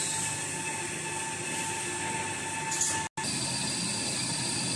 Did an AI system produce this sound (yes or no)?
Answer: no